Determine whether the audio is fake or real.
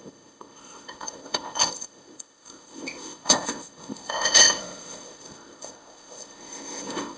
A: fake